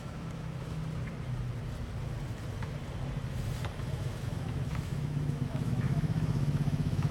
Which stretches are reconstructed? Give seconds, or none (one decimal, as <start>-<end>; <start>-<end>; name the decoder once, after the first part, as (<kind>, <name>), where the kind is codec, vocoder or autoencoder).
0.0-0.8 (autoencoder, DAC-VAE); 3.9-7.1